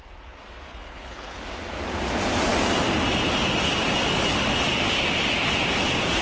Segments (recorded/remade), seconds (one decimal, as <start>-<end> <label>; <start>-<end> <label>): 0.0-0.7 recorded; 0.7-1.4 remade; 1.4-6.2 recorded

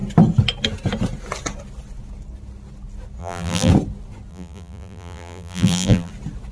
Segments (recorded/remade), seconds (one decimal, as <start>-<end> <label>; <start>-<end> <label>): 0.0-3.2 recorded; 3.2-3.7 remade; 3.7-4.3 recorded; 4.3-6.1 remade; 6.1-6.5 recorded